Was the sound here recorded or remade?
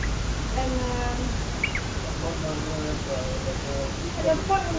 recorded